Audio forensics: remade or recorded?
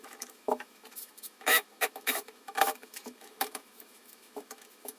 remade